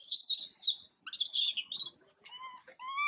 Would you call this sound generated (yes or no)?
no